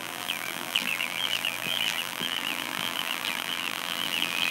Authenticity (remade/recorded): remade